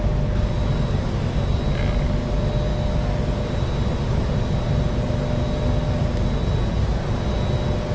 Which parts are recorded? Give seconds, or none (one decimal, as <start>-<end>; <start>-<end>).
0.0-7.9